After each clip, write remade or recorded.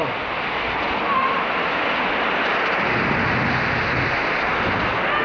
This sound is recorded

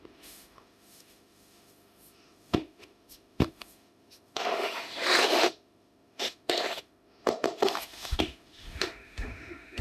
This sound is remade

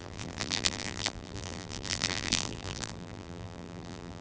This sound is remade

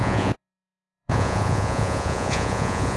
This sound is remade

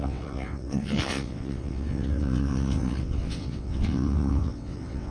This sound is remade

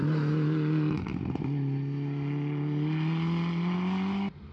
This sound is recorded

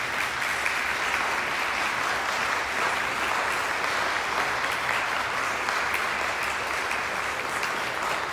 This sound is recorded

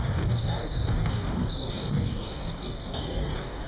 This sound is remade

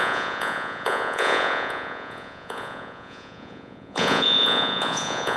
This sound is remade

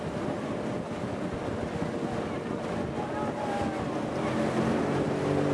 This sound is recorded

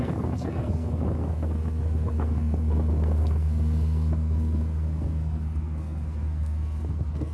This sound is remade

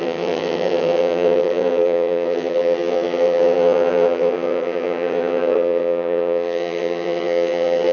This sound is remade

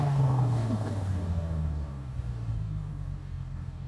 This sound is remade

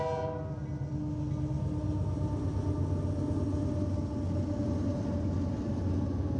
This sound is recorded